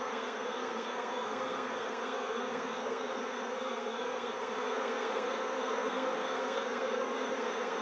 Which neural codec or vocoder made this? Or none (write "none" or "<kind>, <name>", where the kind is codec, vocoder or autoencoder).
codec, SNAC